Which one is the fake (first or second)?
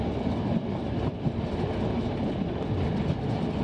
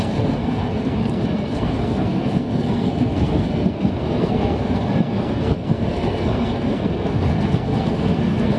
second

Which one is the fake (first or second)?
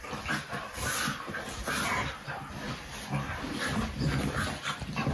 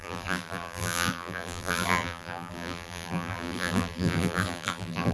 second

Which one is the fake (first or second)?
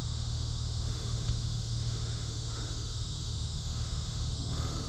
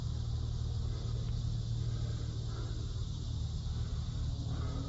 first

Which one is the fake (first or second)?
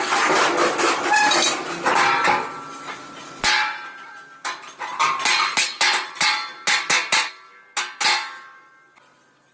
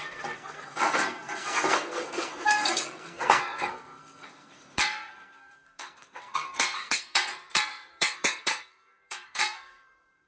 second